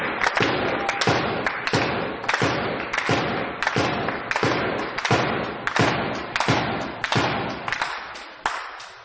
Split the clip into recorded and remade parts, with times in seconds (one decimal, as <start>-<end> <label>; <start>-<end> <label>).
0.0-9.0 recorded